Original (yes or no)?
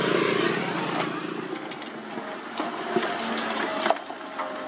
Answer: yes